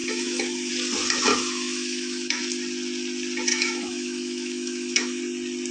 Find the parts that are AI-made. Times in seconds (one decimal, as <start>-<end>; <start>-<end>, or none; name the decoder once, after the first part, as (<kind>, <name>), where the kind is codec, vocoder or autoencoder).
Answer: 0.0-0.7 (autoencoder, DAC-VAE); 1.3-2.4; 3.5-5.2